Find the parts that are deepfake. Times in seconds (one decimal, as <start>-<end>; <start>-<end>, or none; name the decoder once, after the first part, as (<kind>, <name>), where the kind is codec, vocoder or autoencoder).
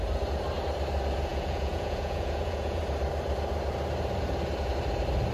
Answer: 1.3-2.8 (vocoder, Vocos)